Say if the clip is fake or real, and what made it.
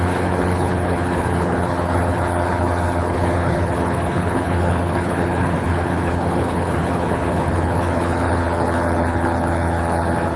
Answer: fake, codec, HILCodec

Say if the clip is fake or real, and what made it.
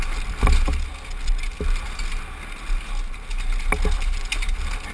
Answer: real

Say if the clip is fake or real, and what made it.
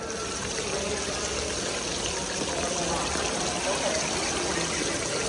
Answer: real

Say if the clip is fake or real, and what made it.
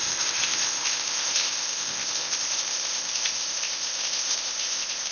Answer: fake, codec, ZipCodec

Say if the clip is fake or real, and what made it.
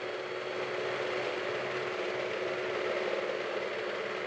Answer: real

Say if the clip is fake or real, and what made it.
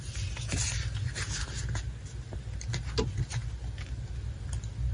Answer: real